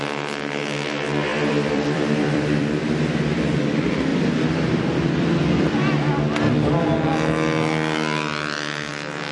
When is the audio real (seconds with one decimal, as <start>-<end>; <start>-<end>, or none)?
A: 0.0-1.3; 3.2-4.1; 5.0-9.3